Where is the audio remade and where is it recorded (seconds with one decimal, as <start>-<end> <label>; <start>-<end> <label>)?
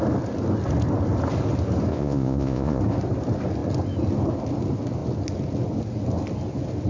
0.0-1.9 recorded; 1.9-2.8 remade; 2.8-6.9 recorded